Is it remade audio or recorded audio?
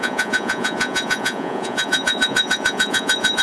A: remade